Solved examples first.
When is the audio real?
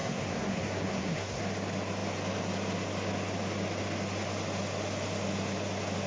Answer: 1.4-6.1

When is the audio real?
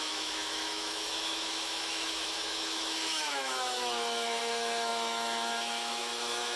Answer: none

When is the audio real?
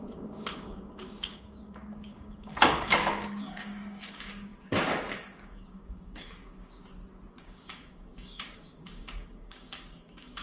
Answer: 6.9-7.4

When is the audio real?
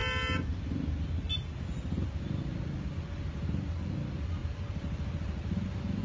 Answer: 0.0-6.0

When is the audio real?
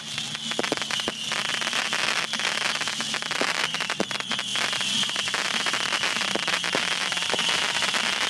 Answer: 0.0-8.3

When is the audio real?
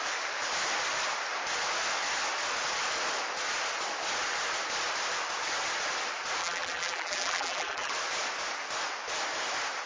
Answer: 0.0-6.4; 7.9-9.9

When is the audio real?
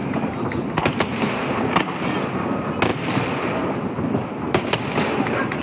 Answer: 0.0-5.6